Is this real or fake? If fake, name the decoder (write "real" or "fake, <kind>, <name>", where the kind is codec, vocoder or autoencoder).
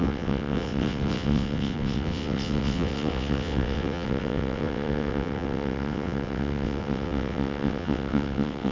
fake, vocoder, WaveNeXt